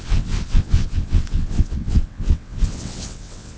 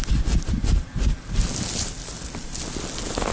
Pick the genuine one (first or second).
second